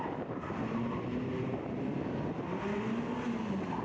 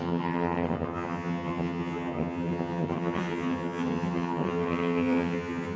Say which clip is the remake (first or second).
second